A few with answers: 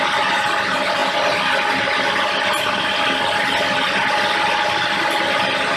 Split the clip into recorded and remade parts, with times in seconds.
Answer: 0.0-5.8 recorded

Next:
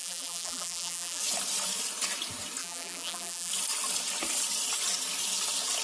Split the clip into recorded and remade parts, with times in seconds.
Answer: 0.0-1.2 remade; 1.2-2.6 recorded; 2.6-3.5 remade; 3.5-5.8 recorded

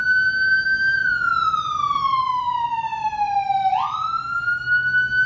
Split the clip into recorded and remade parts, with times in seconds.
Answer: 0.0-5.3 recorded

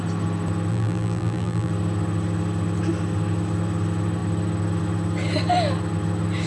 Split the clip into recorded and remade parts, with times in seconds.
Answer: 0.0-0.7 recorded; 0.7-1.7 remade; 1.7-6.5 recorded

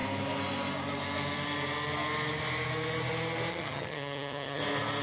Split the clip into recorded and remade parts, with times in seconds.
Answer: 0.0-3.5 recorded; 3.5-4.6 remade; 4.6-5.0 recorded

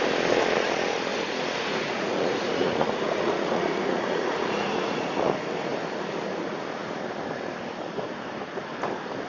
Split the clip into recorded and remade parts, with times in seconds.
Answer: 0.0-1.1 recorded; 1.1-5.3 remade; 5.3-9.3 recorded

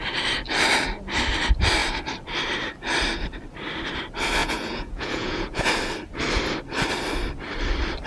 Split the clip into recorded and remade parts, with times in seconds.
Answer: 0.0-4.4 recorded; 4.4-5.7 remade; 5.7-8.1 recorded